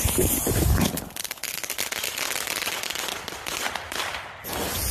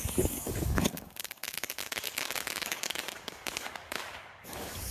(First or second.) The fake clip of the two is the second